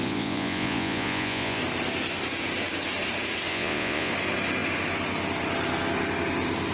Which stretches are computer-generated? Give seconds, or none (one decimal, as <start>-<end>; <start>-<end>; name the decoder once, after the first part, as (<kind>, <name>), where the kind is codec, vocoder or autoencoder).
0.0-1.6 (vocoder, Vocos); 3.5-4.1